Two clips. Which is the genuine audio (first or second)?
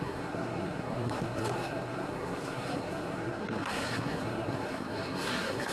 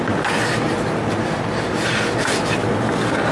second